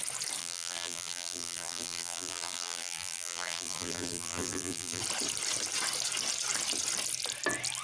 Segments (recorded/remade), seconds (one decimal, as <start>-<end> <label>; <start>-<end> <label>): 0.0-0.4 recorded; 0.4-5.0 remade; 5.0-7.8 recorded